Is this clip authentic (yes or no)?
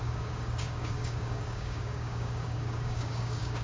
no